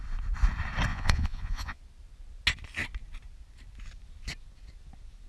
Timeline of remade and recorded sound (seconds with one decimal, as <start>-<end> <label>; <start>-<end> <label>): 0.0-0.9 recorded; 0.9-1.8 remade; 1.8-5.3 recorded

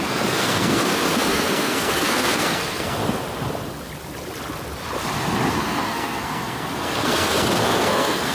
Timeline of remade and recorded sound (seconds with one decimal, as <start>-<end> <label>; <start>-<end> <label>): 0.0-3.0 remade; 3.0-5.5 recorded; 5.5-8.3 remade

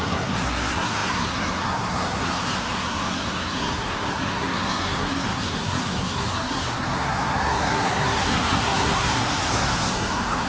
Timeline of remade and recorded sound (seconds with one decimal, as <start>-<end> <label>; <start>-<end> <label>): 0.0-10.5 remade

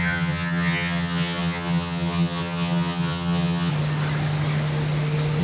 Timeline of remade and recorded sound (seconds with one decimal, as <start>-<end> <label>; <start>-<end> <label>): 0.0-3.7 remade; 3.7-5.4 recorded

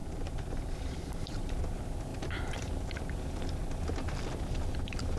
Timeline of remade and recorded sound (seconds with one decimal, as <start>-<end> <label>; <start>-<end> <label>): 0.0-1.6 remade; 1.6-5.2 recorded

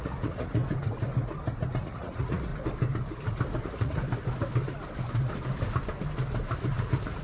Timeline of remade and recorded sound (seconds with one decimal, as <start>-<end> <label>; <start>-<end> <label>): 0.0-0.6 remade; 0.6-1.8 recorded; 1.8-2.5 remade; 2.5-3.6 recorded; 3.6-4.0 remade; 4.0-6.7 recorded; 6.7-7.2 remade

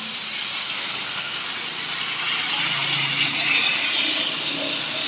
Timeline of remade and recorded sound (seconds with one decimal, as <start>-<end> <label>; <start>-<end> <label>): 0.0-0.6 recorded; 0.6-1.4 remade; 1.4-5.1 recorded